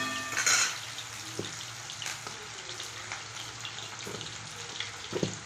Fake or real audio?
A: real